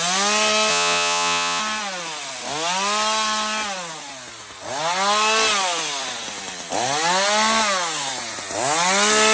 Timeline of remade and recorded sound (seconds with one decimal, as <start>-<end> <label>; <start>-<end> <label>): 0.0-0.7 recorded; 0.7-1.6 remade; 1.6-9.3 recorded